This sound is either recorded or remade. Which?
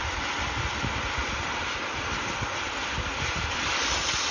recorded